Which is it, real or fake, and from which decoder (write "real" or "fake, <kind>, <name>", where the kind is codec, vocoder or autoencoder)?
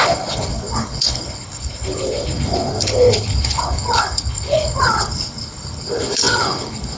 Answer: fake, codec, HILCodec